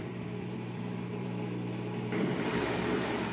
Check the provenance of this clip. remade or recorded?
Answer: remade